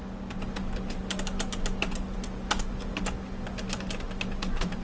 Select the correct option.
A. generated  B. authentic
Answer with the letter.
B